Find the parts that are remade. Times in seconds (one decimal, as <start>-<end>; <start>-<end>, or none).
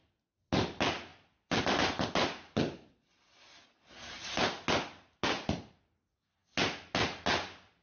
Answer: 1.1-1.6